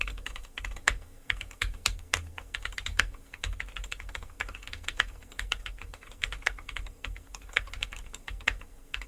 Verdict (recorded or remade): remade